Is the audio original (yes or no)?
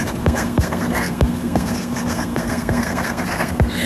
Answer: no